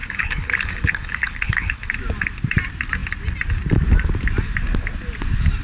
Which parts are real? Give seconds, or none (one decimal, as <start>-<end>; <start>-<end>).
1.9-5.6